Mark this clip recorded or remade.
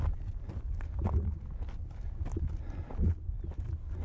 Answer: recorded